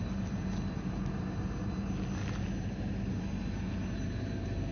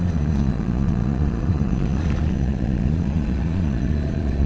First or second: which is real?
first